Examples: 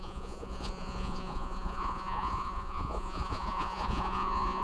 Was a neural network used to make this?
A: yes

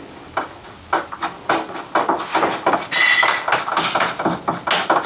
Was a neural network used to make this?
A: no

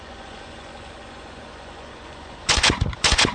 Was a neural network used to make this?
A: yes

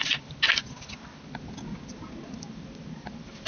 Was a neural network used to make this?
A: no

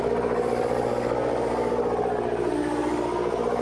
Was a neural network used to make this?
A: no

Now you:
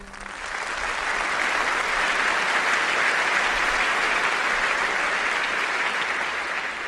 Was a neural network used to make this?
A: no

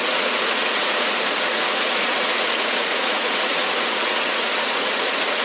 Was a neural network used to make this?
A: yes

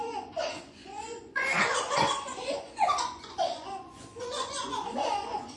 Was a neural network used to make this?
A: yes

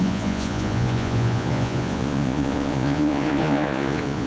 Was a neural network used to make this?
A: yes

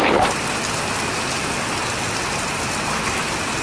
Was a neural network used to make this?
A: no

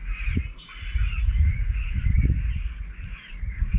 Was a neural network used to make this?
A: yes